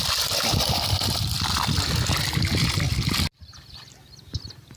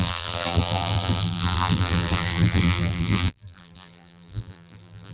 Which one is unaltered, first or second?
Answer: first